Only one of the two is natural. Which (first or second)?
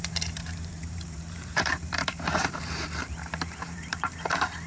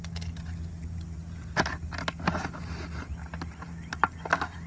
second